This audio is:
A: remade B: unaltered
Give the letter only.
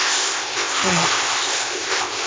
A